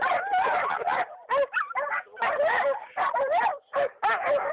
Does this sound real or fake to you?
real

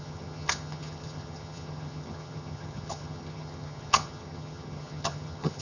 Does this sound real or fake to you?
fake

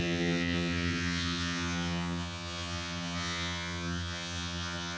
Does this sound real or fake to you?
fake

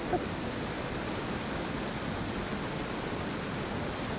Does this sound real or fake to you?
real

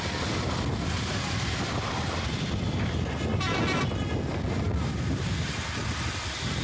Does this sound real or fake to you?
real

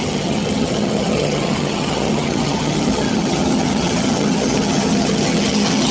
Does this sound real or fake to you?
fake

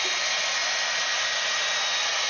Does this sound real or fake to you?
real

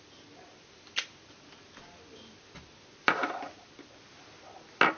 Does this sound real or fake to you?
real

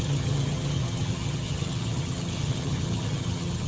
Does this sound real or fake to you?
fake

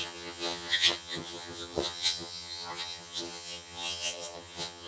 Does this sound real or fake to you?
fake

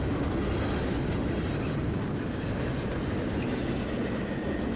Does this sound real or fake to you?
real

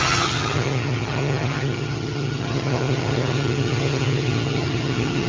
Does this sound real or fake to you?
fake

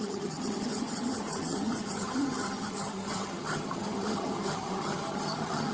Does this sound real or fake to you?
fake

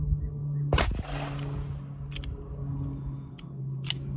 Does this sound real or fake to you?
real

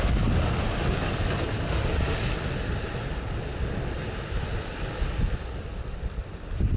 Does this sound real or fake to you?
real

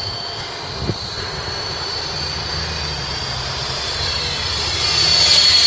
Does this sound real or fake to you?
real